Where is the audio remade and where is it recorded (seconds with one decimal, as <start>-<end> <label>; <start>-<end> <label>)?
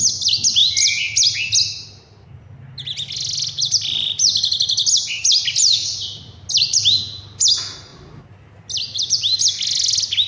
0.0-10.3 recorded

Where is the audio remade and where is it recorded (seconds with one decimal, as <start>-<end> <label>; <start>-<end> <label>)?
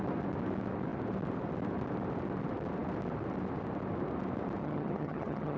0.0-4.6 recorded; 4.6-5.6 remade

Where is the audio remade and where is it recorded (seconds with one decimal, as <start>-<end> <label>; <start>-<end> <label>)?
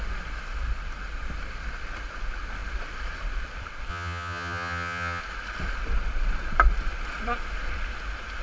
0.0-3.9 recorded; 3.9-5.2 remade; 5.2-8.4 recorded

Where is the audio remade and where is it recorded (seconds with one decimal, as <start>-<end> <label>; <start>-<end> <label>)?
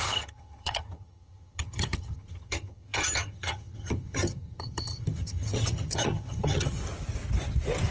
0.0-6.8 remade; 6.8-7.9 recorded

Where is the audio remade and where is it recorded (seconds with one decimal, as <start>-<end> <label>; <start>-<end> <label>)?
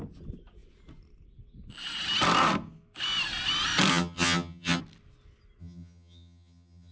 0.0-3.9 recorded; 3.9-4.8 remade; 4.8-5.6 recorded; 5.6-6.9 remade